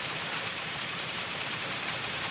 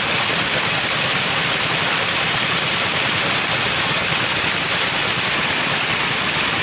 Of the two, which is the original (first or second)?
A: second